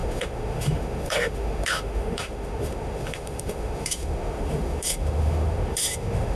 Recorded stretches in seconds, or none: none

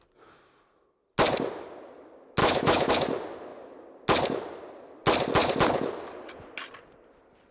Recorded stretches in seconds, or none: 0.0-2.4; 2.9-7.5

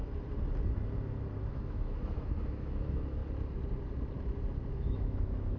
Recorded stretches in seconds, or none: 0.0-1.5; 3.2-4.7

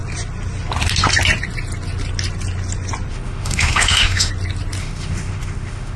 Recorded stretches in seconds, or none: 0.0-3.1; 4.3-4.8

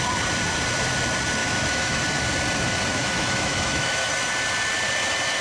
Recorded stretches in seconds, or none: 0.0-1.4; 2.0-3.0; 4.1-5.4

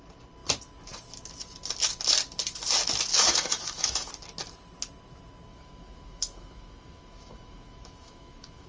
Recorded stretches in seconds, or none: 0.0-3.1; 4.1-5.5